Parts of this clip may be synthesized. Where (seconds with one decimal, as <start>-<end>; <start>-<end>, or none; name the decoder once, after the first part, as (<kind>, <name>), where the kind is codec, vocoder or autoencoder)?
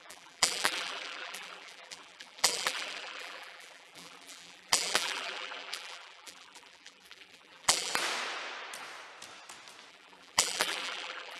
0.0-7.9 (vocoder, BigVGAN v2); 9.9-11.4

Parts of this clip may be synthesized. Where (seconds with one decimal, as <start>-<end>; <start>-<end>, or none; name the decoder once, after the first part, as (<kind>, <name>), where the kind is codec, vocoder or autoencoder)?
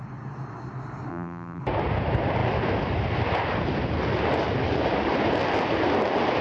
1.1-1.6 (vocoder, BigVGAN v2)